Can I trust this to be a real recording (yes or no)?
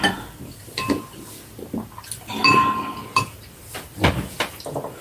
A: yes